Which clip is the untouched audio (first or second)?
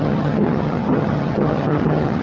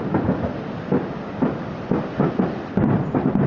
second